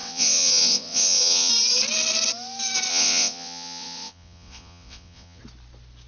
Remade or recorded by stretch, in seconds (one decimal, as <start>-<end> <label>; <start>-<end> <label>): 0.0-1.5 remade; 1.5-2.9 recorded; 2.9-5.4 remade; 5.4-6.1 recorded

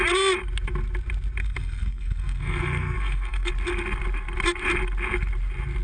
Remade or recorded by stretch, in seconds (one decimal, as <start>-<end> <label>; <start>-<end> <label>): 0.0-1.4 recorded; 1.4-3.5 remade; 3.5-5.8 recorded

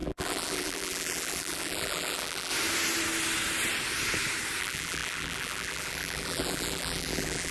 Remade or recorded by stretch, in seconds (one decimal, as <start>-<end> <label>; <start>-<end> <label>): 0.0-2.5 remade; 2.5-4.6 recorded; 4.6-7.5 remade

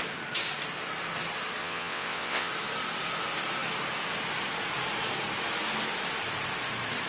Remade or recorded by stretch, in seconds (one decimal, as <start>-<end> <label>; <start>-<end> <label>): 0.0-1.6 recorded; 1.6-2.5 remade; 2.5-7.1 recorded

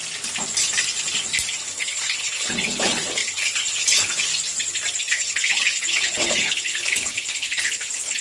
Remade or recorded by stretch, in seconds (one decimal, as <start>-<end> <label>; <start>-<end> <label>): 0.0-1.6 recorded; 1.6-4.3 remade; 4.3-5.0 recorded; 5.0-8.2 remade

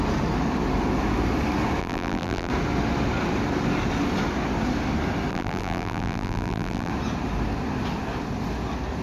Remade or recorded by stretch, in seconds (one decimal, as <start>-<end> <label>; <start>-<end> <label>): 0.0-1.8 recorded; 1.8-2.5 remade; 2.5-5.3 recorded; 5.3-6.9 remade; 6.9-9.0 recorded

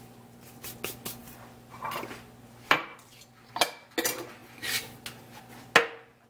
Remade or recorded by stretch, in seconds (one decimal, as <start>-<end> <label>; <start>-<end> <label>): 0.0-1.2 recorded; 1.2-2.0 remade; 2.0-6.3 recorded

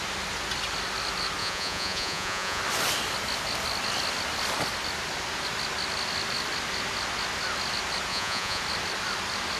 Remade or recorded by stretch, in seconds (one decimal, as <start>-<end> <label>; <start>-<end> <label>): 0.0-1.4 recorded; 1.4-2.6 remade; 2.6-8.1 recorded; 8.1-8.6 remade; 8.6-9.6 recorded